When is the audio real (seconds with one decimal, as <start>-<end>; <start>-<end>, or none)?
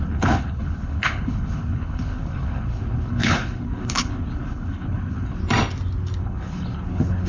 5.4-6.2